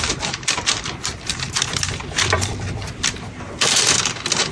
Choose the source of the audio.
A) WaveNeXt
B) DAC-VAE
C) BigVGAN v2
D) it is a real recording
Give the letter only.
C